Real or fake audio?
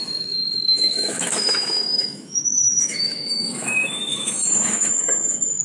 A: fake